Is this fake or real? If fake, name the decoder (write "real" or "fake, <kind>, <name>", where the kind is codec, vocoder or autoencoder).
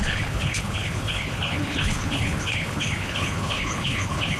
fake, codec, HILCodec